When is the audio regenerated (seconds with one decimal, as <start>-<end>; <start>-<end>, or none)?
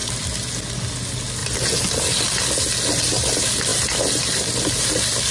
none